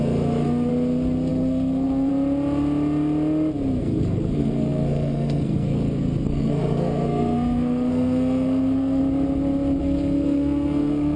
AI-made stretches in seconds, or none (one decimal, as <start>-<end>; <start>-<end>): 0.0-0.7; 1.3-2.1; 3.8-9.0; 9.8-11.2